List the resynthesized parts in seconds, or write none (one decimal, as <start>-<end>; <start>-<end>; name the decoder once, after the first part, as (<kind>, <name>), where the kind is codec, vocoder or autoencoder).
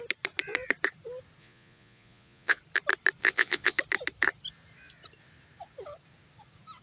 1.4-2.6 (vocoder, Vocos); 3.2-3.8